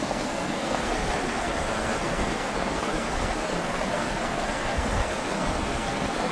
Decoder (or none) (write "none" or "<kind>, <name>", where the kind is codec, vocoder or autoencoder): codec, SNAC